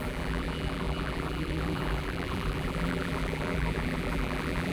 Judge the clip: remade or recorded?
remade